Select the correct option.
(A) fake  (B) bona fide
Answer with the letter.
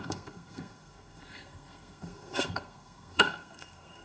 A